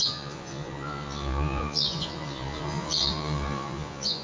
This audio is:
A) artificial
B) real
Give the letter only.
A